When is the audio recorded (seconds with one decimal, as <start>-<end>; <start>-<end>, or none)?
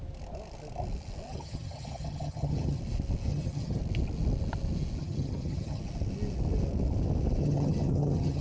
0.0-1.3; 2.8-3.3; 3.8-5.0; 5.8-7.4